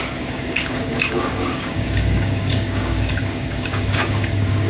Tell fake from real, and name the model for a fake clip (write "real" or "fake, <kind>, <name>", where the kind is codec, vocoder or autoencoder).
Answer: fake, codec, DAC